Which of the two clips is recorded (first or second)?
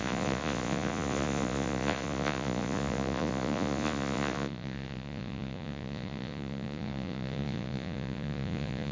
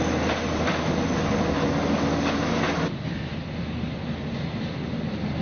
second